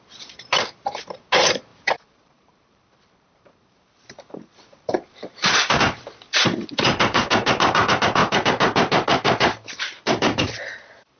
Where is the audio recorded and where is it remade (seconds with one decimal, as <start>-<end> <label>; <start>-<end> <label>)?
0.0-1.7 recorded; 1.7-5.8 remade; 5.8-11.2 recorded